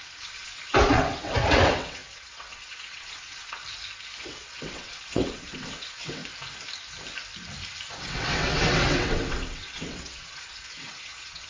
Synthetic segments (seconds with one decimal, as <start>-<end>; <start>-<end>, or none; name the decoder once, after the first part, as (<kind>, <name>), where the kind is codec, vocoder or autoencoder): 0.0-3.6 (vocoder, WaveNeXt); 4.2-6.2; 8.0-11.5